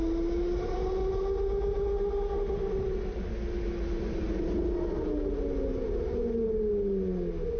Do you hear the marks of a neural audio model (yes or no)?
no